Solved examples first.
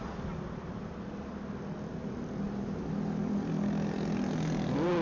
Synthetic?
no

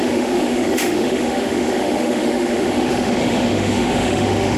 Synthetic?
yes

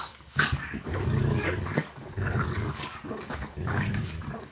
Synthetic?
yes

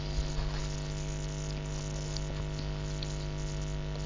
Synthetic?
no